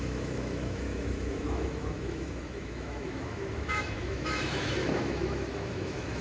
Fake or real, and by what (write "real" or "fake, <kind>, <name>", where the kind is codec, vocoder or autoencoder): fake, autoencoder, DAC-VAE